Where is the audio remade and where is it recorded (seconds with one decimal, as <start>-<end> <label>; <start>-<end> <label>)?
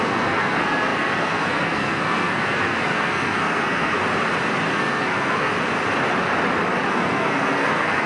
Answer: 0.0-4.0 remade; 4.0-4.7 recorded; 4.7-5.5 remade; 5.5-6.9 recorded; 6.9-8.1 remade